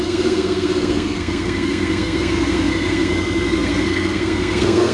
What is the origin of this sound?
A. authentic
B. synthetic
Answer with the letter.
B